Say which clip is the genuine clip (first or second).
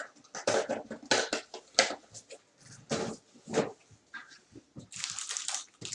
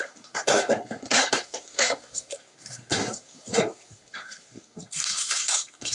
first